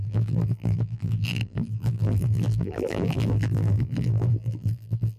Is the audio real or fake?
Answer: fake